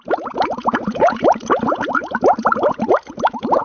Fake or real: fake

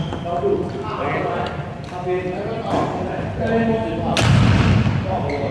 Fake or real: real